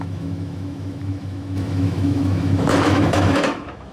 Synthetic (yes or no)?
yes